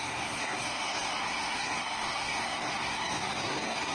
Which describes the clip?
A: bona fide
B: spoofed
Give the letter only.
B